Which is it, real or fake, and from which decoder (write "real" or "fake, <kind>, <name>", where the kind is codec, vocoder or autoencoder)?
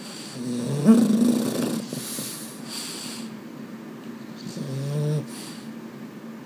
real